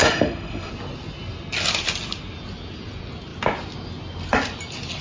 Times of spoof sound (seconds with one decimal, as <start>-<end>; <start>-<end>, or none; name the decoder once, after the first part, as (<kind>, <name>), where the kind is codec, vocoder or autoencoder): 0.0-0.7 (autoencoder, DAC-VAE)